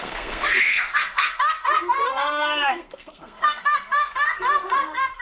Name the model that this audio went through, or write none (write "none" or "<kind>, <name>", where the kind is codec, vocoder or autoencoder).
codec, SNAC